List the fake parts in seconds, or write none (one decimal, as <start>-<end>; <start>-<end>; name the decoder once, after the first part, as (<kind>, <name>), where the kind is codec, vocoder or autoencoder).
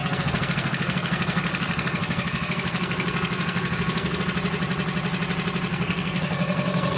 0.0-4.2 (codec, SNAC); 5.7-7.0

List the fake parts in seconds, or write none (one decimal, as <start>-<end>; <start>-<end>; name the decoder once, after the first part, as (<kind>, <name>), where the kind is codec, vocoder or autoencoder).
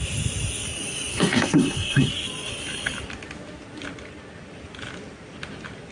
1.1-2.1 (codec, SNAC)